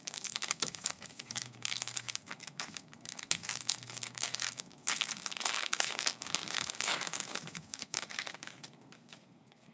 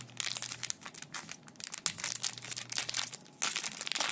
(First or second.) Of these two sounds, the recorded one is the second